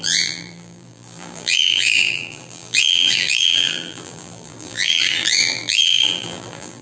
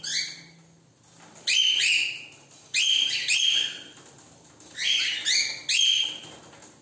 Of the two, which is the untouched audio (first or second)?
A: second